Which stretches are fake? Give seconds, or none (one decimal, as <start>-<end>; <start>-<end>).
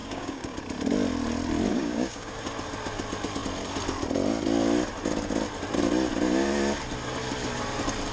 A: 0.0-0.6; 1.7-2.3